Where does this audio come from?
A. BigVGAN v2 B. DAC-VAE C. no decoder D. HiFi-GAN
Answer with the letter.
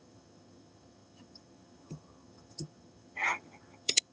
D